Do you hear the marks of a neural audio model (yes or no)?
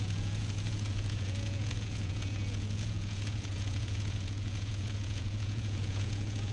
yes